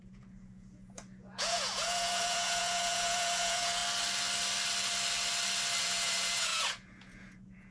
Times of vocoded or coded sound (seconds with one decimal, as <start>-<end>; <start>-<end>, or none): 0.0-3.8; 5.8-7.7